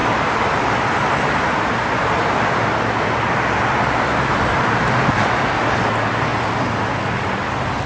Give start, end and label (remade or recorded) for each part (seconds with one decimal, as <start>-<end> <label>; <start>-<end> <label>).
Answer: 0.0-1.8 remade; 1.8-7.9 recorded